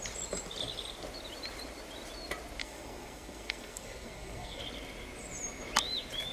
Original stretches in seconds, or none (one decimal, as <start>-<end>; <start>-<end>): 0.0-2.6; 4.6-6.3